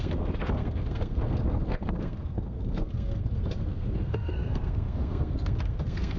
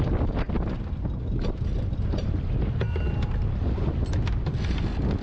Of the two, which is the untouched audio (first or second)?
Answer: second